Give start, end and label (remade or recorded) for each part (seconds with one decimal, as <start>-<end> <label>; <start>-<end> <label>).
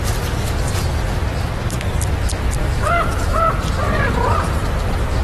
0.0-2.6 recorded; 2.6-3.4 remade; 3.4-5.2 recorded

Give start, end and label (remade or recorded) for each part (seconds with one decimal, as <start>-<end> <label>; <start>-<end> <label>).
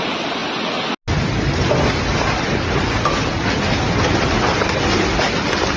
0.0-5.8 recorded